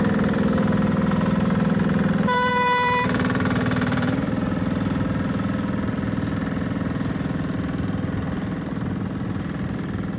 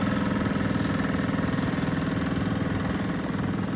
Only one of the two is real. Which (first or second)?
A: second